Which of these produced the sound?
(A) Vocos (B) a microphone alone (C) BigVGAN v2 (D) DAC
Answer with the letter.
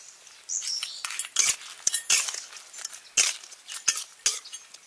B